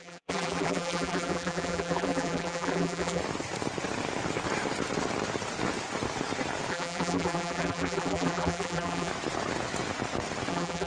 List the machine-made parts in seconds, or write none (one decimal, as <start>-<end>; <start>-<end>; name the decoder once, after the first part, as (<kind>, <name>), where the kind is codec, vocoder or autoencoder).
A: 0.0-3.2 (vocoder, BigVGAN v2); 6.7-9.1; 10.5-10.9